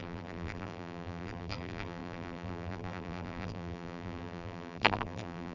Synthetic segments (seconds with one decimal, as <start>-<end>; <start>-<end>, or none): 0.0-5.5